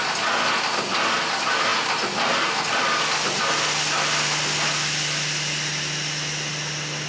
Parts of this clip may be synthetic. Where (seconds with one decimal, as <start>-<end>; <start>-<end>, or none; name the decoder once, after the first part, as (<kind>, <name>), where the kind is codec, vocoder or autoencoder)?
none